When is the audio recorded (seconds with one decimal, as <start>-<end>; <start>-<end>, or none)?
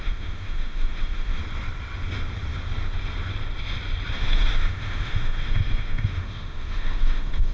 1.4-4.1